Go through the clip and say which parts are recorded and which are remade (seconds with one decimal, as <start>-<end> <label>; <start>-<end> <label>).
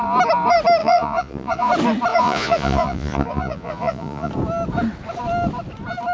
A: 0.0-0.8 recorded; 0.8-1.7 remade; 1.7-2.1 recorded; 2.1-4.3 remade; 4.3-6.1 recorded